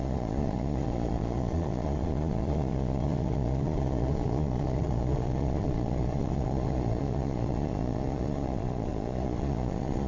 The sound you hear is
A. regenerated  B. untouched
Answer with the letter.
A